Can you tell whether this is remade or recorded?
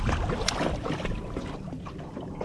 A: recorded